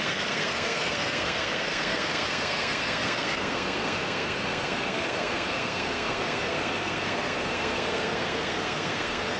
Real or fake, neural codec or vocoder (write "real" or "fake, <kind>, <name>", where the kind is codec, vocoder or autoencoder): fake, codec, SNAC